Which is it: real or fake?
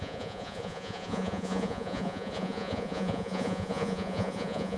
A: fake